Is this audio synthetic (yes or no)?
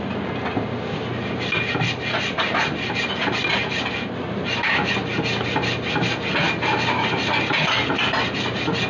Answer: no